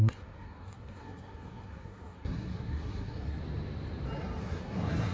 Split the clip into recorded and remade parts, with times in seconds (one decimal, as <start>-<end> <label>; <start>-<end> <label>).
0.0-3.4 remade; 3.4-4.4 recorded; 4.4-5.1 remade